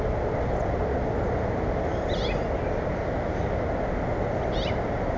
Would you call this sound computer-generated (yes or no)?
no